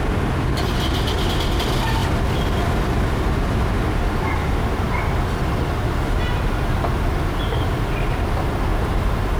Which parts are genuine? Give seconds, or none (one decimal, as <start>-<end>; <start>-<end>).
0.0-9.4